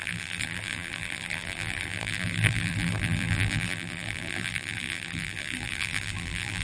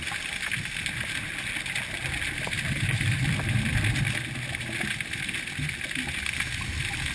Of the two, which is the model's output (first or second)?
first